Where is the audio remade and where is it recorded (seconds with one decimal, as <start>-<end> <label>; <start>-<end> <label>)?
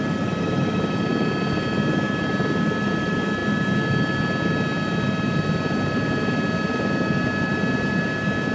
0.0-8.5 recorded